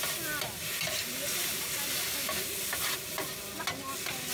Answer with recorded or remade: recorded